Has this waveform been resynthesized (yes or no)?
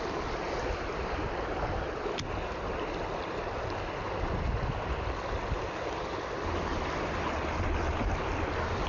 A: no